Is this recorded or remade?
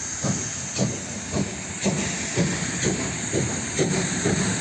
recorded